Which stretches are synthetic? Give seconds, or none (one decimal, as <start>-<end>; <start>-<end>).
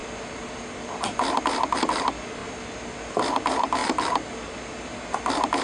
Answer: 0.0-0.6; 3.8-4.7